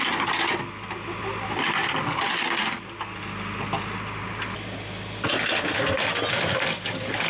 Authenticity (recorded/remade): recorded